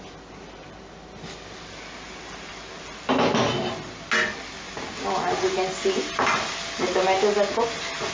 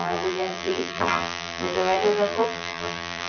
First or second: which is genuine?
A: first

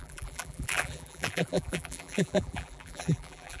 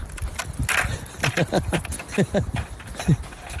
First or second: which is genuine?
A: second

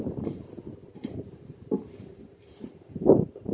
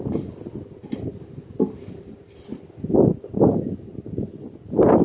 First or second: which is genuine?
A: second